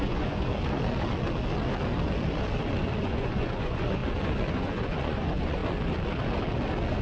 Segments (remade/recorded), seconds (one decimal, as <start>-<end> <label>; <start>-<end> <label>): 0.0-0.5 remade; 0.5-3.0 recorded; 3.0-4.0 remade; 4.0-4.5 recorded; 4.5-5.6 remade; 5.6-7.0 recorded